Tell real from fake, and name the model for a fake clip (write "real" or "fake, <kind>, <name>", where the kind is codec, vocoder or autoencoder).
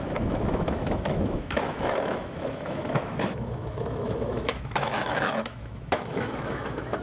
fake, autoencoder, DAC-VAE